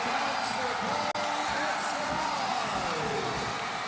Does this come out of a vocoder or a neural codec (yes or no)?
no